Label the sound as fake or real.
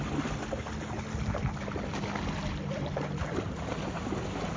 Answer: real